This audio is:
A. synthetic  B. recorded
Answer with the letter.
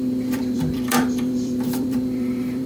A